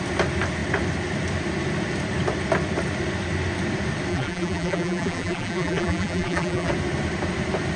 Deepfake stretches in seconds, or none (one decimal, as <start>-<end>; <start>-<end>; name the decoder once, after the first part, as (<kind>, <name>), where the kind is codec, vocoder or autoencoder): 4.1-6.7 (vocoder, BigVGAN v2)